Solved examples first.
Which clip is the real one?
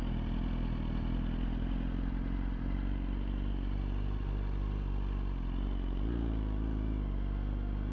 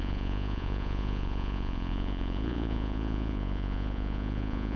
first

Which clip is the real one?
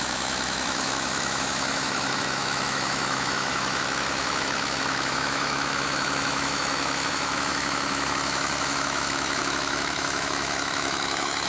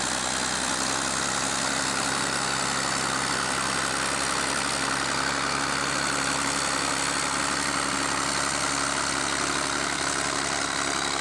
second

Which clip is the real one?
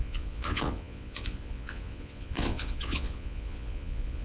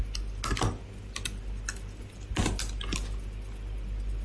second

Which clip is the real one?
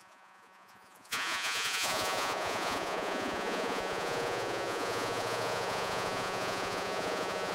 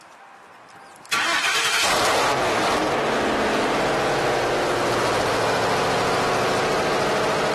second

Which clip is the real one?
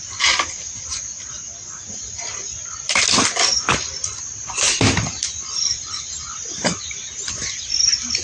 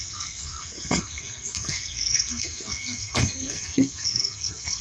first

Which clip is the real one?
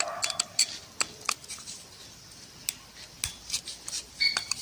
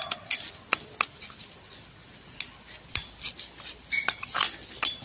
first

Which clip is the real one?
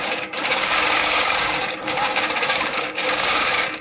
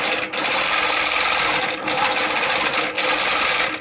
second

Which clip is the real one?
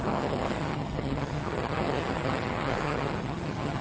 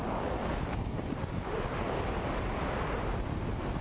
second